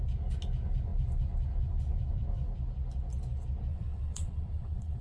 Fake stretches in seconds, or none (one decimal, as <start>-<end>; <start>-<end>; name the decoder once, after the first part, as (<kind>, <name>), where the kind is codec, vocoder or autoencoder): 3.7-5.0 (vocoder, WaveNeXt)